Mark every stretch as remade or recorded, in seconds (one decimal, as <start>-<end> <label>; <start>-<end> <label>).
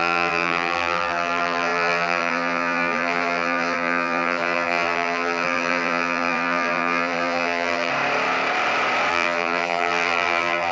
0.0-7.9 remade; 7.9-9.1 recorded; 9.1-10.7 remade